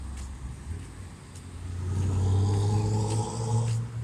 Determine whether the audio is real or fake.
real